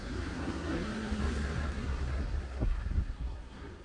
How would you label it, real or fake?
fake